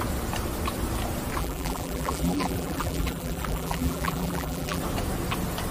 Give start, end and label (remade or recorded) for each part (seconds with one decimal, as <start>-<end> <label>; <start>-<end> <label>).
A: 0.0-1.4 recorded; 1.4-4.8 remade; 4.8-5.7 recorded